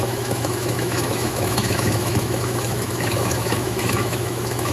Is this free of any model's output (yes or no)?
no